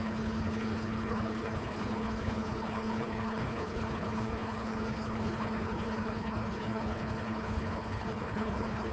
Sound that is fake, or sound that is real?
fake